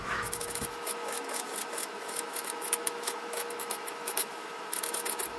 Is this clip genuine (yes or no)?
no